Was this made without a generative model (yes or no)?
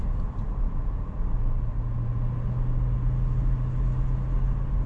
yes